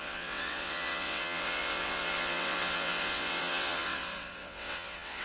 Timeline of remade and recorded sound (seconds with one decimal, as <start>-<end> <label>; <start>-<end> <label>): 0.0-5.2 remade